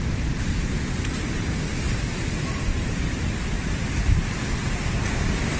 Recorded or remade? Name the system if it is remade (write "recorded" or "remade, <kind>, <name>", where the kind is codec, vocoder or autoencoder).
recorded